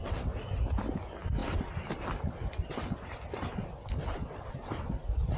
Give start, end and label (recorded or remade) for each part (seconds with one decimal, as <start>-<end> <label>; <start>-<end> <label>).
0.0-5.4 recorded